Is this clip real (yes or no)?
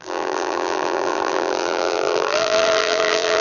no